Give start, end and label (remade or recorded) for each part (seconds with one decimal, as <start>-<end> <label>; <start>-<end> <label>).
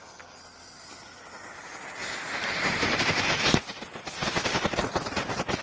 0.0-2.0 recorded; 2.0-3.2 remade; 3.2-4.2 recorded; 4.2-5.6 remade